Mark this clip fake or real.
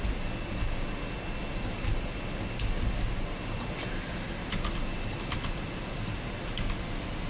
real